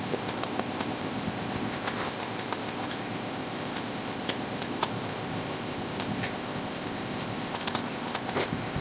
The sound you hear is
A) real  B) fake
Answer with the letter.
B